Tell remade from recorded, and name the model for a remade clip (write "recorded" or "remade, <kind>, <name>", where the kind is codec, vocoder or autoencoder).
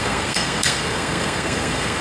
remade, codec, SNAC